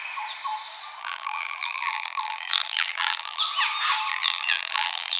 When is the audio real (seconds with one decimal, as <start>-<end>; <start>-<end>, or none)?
0.0-1.0; 3.4-4.1